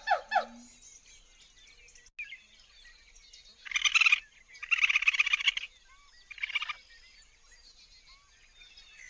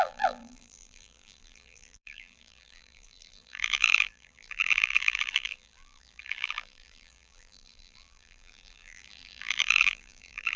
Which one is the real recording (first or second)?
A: first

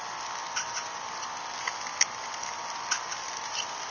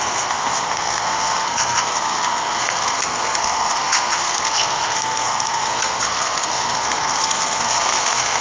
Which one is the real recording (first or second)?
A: first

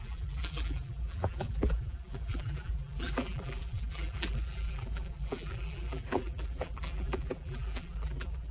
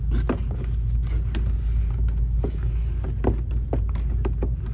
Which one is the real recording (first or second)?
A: second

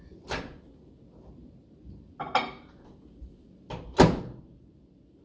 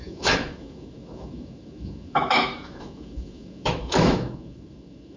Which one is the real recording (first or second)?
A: first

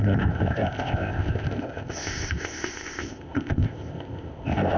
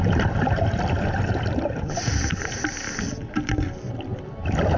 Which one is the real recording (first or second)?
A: second